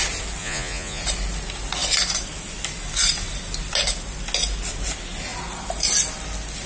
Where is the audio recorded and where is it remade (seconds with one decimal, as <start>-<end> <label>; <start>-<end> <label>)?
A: 0.0-0.4 recorded; 0.4-1.0 remade; 1.0-6.7 recorded